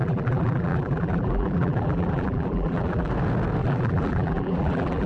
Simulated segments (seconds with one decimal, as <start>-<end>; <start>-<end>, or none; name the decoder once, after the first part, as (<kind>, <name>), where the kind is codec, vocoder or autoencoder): 0.0-3.1 (vocoder, BigVGAN v2); 3.6-5.1